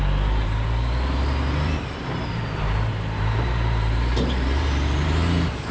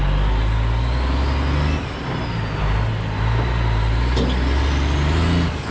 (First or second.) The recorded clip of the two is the second